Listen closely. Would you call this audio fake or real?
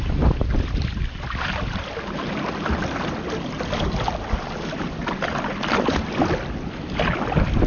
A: real